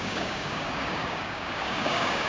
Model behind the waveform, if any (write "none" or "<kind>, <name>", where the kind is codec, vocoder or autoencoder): codec, DAC